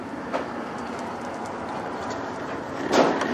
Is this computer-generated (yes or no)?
no